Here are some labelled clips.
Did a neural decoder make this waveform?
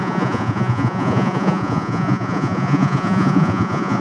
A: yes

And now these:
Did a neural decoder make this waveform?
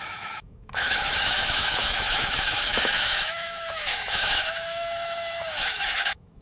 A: yes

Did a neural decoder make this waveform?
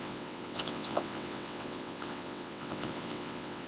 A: yes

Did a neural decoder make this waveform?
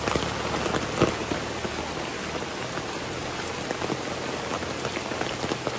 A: no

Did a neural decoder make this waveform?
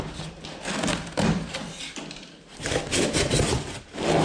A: no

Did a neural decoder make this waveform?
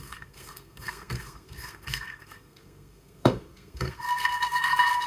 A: yes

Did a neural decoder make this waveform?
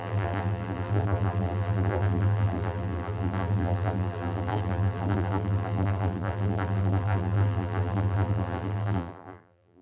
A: yes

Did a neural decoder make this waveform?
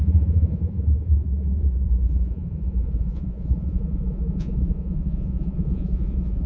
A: yes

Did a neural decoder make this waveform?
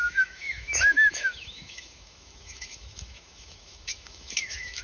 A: yes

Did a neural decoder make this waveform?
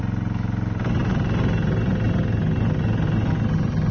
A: no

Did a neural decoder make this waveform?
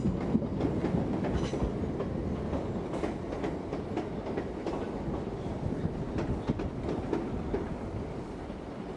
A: no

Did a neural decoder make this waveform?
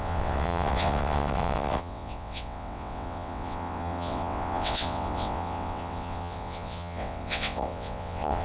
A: yes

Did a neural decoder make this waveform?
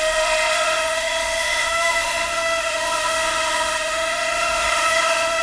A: yes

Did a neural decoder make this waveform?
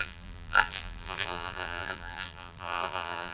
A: yes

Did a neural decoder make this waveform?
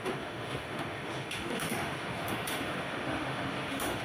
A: yes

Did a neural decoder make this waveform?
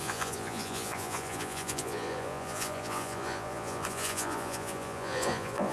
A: yes